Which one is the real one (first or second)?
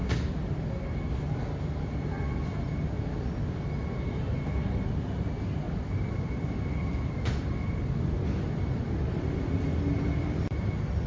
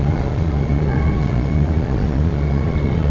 first